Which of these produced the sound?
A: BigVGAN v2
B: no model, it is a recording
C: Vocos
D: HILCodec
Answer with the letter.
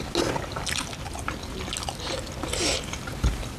B